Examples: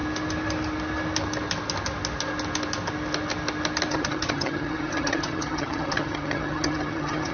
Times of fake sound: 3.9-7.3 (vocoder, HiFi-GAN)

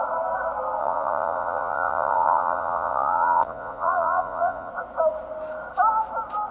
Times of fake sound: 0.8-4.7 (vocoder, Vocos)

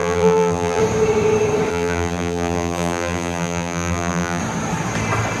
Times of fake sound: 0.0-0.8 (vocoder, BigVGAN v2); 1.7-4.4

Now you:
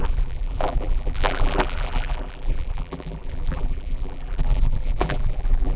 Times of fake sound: 0.0-5.8 (vocoder, BigVGAN v2)

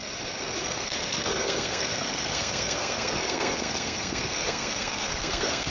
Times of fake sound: 0.6-5.7 (codec, SNAC)